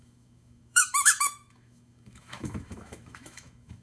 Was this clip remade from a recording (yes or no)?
yes